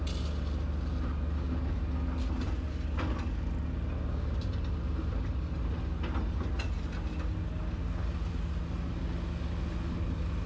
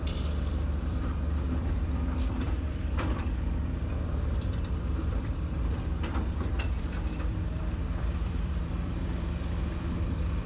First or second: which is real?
first